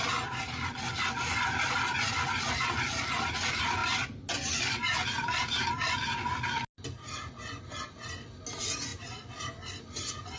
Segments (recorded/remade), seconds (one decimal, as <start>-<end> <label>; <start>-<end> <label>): 0.0-10.4 recorded